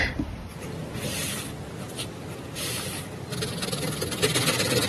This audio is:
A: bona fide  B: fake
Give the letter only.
A